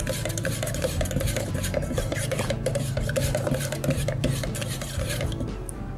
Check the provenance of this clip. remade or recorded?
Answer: remade